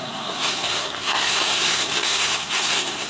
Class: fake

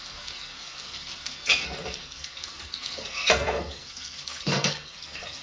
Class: fake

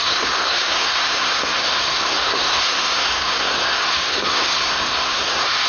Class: fake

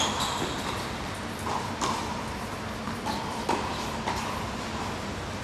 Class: real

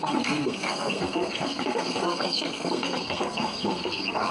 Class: fake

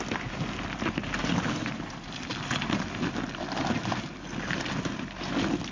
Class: real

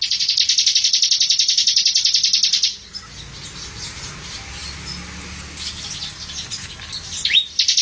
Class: real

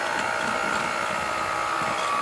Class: real